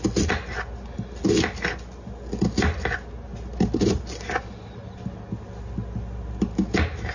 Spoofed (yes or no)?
no